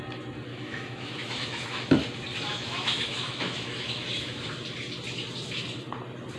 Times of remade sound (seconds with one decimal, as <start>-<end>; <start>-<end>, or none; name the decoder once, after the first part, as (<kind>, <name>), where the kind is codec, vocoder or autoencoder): 0.5-1.9 (autoencoder, DAC-VAE); 2.5-4.5